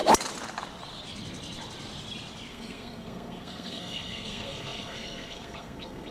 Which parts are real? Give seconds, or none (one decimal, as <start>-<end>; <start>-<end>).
0.0-2.5